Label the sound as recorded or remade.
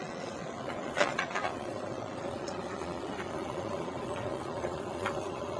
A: remade